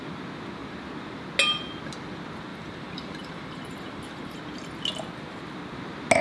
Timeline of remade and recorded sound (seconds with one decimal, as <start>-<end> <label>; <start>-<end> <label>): 0.0-2.5 recorded; 2.5-4.4 remade; 4.4-6.2 recorded